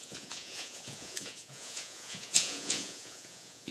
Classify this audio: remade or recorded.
remade